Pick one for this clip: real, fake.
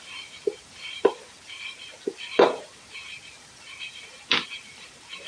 fake